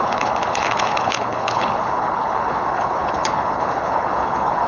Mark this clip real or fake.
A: fake